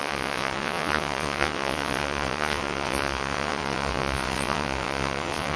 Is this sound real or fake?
fake